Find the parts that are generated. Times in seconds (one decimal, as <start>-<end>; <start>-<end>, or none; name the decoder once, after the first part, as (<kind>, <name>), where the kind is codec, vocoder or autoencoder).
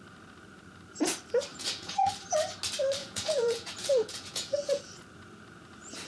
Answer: 1.5-2.1 (vocoder, Vocos); 3.0-4.8